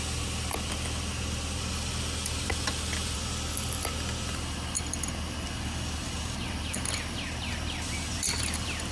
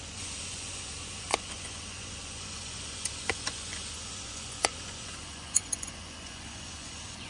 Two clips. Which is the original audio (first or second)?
first